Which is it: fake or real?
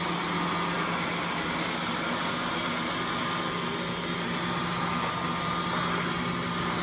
real